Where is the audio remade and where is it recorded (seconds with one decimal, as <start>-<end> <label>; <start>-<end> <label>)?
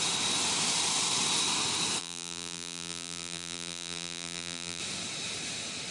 0.0-2.0 recorded; 2.0-4.8 remade; 4.8-5.9 recorded